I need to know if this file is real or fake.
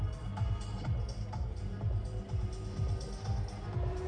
real